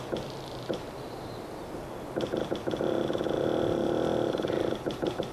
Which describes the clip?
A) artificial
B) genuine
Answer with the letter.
B